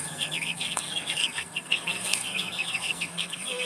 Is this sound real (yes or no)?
no